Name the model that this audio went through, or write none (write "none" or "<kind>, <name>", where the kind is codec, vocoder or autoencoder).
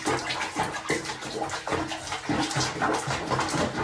none